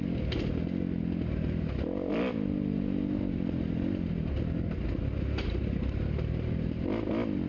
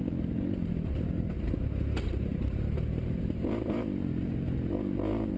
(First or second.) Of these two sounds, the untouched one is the first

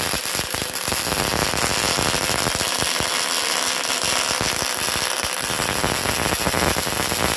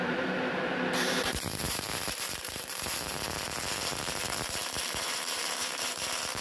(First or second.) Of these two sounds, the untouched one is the first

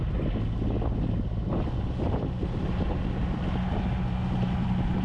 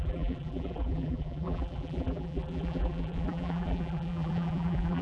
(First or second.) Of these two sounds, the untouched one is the first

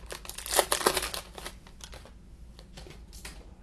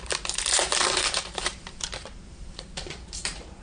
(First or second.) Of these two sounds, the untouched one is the first